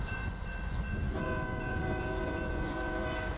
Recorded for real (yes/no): no